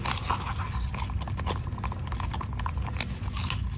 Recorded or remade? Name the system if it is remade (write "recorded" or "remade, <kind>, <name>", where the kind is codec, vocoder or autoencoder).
recorded